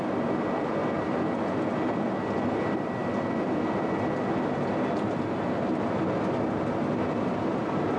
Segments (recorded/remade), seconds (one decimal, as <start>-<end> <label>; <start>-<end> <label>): 0.0-0.8 recorded; 0.8-2.2 remade; 2.2-8.0 recorded